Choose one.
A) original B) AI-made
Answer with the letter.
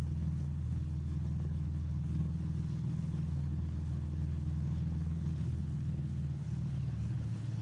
B